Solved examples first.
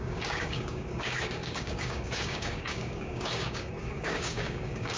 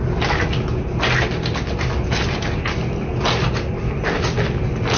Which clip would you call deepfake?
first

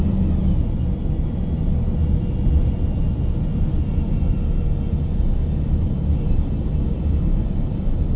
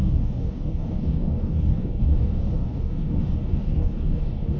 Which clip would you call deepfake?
second